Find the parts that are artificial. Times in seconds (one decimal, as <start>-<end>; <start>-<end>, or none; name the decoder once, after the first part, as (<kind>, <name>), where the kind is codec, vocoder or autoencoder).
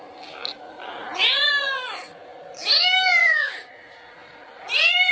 3.2-3.7 (codec, DAC)